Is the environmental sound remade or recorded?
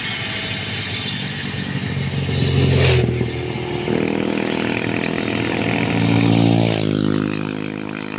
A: recorded